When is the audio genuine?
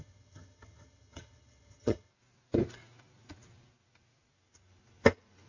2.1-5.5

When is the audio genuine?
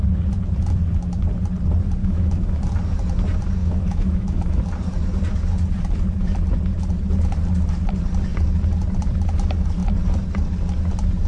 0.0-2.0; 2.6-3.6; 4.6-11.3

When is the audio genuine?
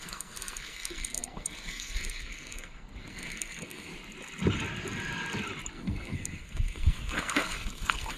3.9-5.7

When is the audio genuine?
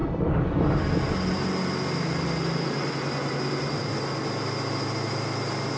0.0-5.8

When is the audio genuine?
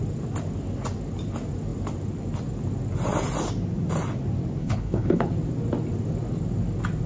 0.0-4.6; 5.3-7.1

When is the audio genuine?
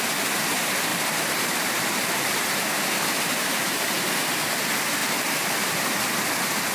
0.0-0.9; 2.7-5.0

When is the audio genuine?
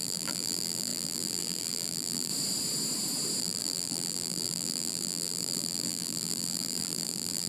2.3-3.4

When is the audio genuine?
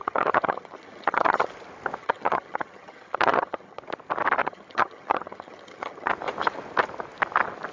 1.5-2.0; 3.8-4.4; 6.1-7.7